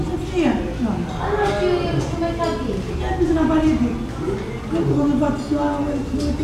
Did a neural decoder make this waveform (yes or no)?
no